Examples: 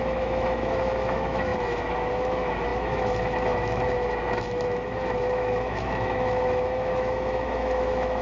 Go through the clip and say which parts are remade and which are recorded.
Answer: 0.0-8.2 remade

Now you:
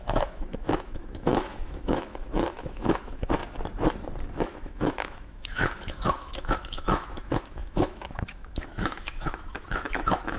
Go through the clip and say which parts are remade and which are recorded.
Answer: 0.0-3.4 remade; 3.4-4.4 recorded; 4.4-10.4 remade

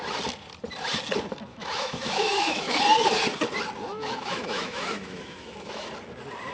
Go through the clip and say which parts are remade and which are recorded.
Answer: 0.0-1.5 recorded; 1.5-2.8 remade; 2.8-3.9 recorded; 3.9-5.9 remade; 5.9-6.5 recorded

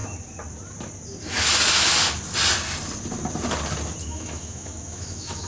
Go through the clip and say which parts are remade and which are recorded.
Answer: 0.0-4.0 recorded; 4.0-5.5 remade

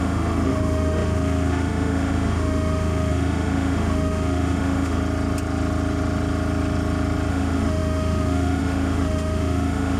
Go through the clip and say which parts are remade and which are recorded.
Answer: 0.0-5.0 remade; 5.0-7.3 recorded; 7.3-10.0 remade

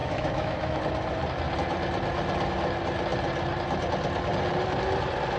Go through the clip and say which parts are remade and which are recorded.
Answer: 0.0-0.8 remade; 0.8-5.4 recorded

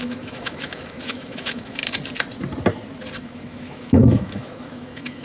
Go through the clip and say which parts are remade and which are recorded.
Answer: 0.0-1.8 remade; 1.8-3.2 recorded; 3.2-5.2 remade